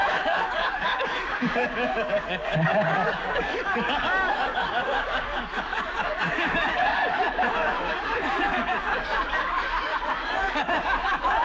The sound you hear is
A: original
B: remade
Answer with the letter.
B